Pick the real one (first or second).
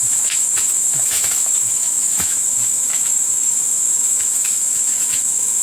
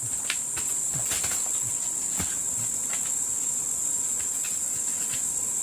second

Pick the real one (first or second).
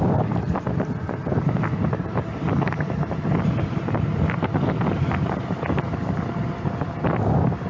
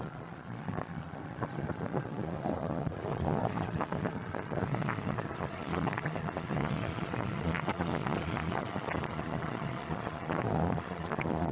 first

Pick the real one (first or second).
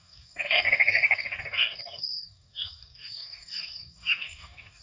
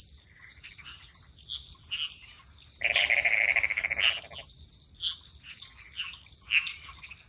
second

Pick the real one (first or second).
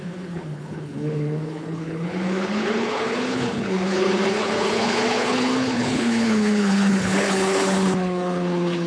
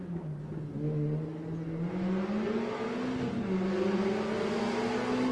second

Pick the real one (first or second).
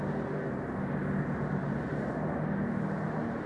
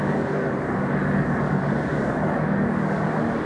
first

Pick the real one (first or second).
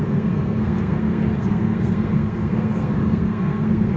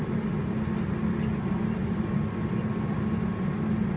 second